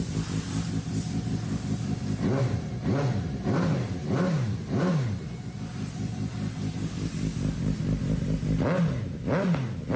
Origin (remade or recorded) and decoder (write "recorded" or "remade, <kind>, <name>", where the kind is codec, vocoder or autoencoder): recorded